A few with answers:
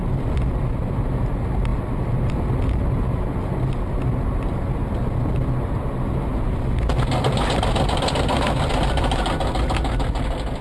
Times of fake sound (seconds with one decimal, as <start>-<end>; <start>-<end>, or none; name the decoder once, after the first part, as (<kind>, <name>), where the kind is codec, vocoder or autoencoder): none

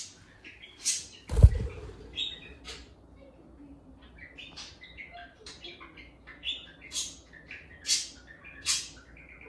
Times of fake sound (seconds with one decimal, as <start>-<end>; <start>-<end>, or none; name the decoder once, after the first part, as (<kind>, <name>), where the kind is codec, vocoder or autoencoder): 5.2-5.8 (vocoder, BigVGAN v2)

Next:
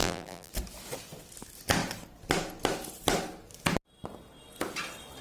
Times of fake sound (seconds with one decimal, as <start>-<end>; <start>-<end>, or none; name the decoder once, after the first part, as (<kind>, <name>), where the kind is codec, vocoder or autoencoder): 0.0-0.5 (vocoder, BigVGAN v2)

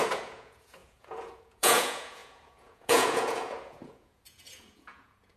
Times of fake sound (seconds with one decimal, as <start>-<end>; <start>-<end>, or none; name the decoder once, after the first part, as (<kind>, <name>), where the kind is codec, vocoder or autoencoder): 0.0-5.4 (vocoder, Vocos)

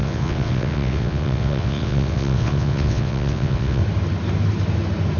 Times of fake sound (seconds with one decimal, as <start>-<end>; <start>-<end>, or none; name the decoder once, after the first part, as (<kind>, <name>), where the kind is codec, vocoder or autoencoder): 0.0-3.8 (vocoder, WaveNeXt)

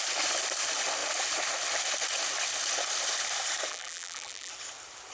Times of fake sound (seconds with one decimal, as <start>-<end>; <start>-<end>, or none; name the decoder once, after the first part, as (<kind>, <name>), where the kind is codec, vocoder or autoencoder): 3.7-4.5 (vocoder, BigVGAN v2)

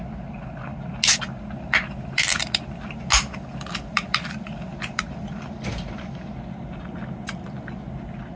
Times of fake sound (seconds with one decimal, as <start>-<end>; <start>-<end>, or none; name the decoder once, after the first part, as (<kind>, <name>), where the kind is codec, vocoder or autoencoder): none